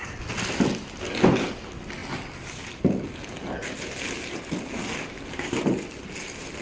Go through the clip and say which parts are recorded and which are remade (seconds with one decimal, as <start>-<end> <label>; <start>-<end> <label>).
0.0-6.6 recorded